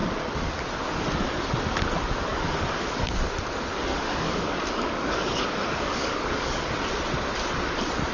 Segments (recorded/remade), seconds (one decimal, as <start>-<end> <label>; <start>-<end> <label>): 0.0-0.6 remade; 0.6-2.3 recorded; 2.3-3.1 remade; 3.1-3.9 recorded; 3.9-6.7 remade; 6.7-8.1 recorded